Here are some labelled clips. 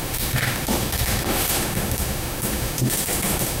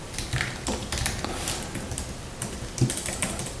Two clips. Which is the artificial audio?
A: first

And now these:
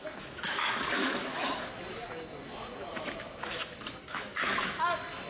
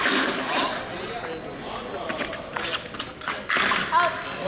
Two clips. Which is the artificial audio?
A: first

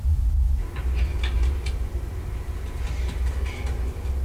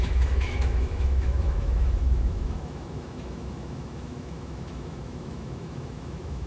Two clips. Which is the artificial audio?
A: second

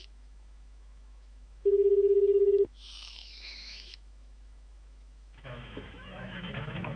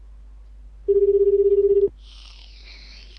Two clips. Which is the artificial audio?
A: first